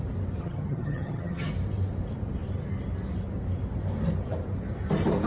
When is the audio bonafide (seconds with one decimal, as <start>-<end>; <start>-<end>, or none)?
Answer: 0.0-0.4; 1.5-5.3